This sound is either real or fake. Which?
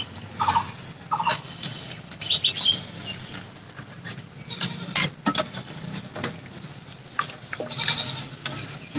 real